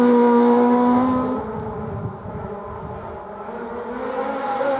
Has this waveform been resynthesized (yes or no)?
no